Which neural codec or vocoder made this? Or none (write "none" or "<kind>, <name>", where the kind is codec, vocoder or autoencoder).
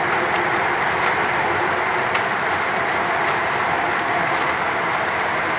vocoder, BigVGAN v2